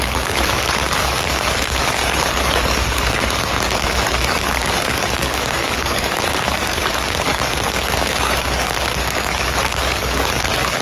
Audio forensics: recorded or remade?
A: remade